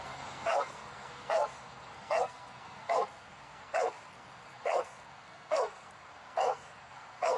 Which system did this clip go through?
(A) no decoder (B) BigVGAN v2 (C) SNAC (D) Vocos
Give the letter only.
C